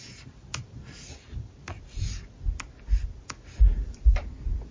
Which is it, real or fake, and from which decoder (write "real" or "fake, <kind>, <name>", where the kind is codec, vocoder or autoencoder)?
real